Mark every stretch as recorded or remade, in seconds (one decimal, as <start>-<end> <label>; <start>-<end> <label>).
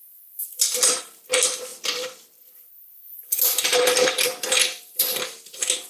0.0-1.7 recorded; 1.7-2.7 remade; 2.7-3.7 recorded; 3.7-5.2 remade; 5.2-5.9 recorded